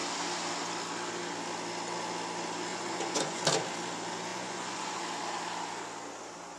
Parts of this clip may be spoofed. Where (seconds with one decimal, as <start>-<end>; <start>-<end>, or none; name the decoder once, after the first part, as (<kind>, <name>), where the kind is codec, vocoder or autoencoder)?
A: 2.7-3.4 (vocoder, Vocos); 4.3-5.0